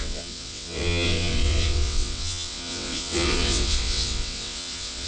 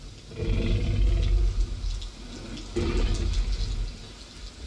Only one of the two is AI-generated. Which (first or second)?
first